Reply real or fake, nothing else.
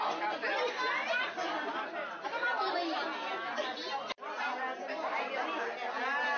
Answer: real